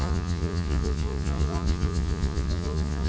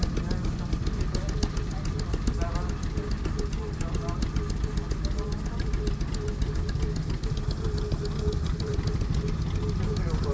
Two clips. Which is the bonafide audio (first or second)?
second